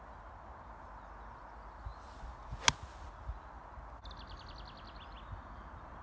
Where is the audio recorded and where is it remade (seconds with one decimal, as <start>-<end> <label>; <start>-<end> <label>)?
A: 0.0-6.0 recorded